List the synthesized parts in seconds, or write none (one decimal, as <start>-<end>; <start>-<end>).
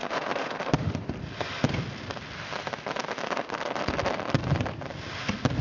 0.0-0.9; 3.2-3.8